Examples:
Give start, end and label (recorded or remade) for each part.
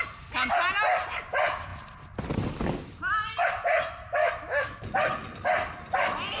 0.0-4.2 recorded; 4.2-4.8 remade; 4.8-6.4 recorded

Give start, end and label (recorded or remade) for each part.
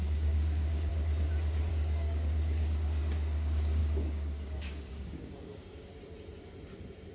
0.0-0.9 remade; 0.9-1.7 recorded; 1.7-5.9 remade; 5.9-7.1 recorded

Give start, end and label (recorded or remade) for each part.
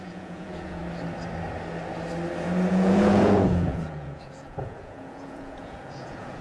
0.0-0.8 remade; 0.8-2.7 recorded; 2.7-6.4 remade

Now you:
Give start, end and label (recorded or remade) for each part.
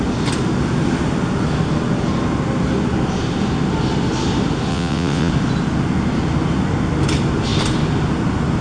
0.0-4.7 recorded; 4.7-5.3 remade; 5.3-8.6 recorded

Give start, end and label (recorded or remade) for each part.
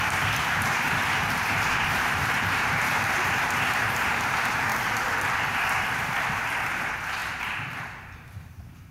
0.0-4.7 remade; 4.7-5.4 recorded; 5.4-7.2 remade; 7.2-8.0 recorded; 8.0-8.9 remade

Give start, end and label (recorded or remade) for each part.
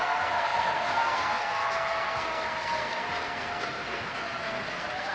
0.0-5.1 remade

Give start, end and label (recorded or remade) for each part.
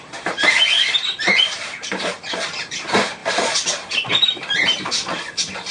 0.0-5.7 remade